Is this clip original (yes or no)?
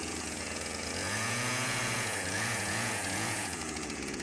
no